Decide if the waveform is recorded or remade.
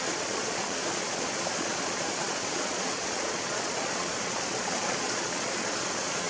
remade